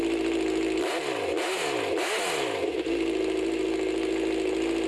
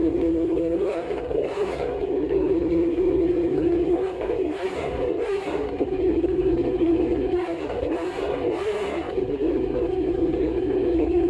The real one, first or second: first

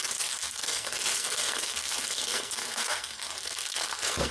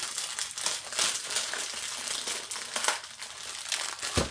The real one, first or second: second